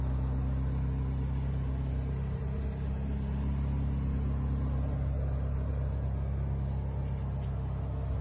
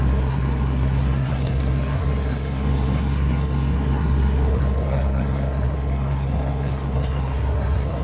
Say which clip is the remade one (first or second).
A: second